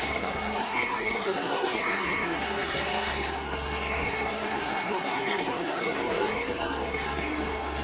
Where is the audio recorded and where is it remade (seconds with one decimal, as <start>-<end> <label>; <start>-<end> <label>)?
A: 0.0-7.8 remade